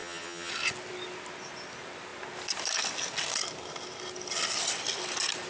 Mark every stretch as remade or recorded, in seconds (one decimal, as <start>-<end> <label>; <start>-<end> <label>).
0.0-0.5 remade; 0.5-5.5 recorded